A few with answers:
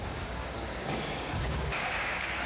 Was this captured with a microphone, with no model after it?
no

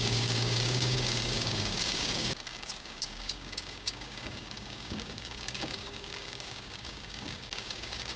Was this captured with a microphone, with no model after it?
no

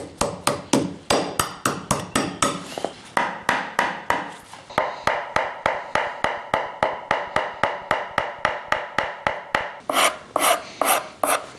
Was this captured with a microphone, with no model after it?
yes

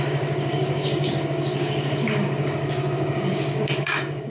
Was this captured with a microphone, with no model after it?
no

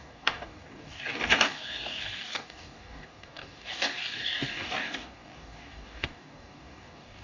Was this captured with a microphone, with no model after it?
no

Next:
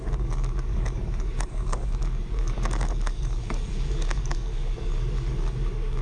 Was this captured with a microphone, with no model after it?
no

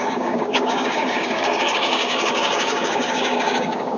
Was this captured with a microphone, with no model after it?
no